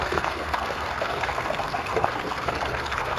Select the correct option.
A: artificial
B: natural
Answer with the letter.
A